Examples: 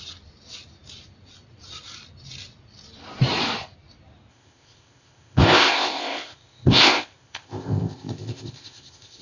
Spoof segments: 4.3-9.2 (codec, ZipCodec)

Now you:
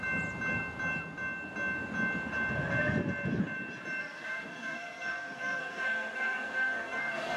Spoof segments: 4.0-7.4 (codec, SNAC)

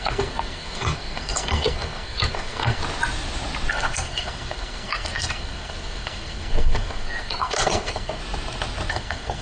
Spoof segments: 0.0-2.8 (codec, SNAC); 3.7-8.2; 8.9-9.4